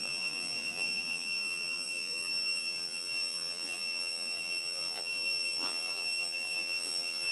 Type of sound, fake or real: fake